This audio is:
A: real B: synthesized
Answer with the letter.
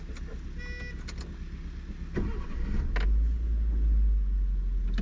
A